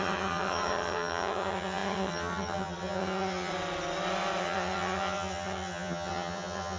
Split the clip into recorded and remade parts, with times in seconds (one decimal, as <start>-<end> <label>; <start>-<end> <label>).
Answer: 0.0-3.5 remade; 3.5-4.4 recorded; 4.4-6.8 remade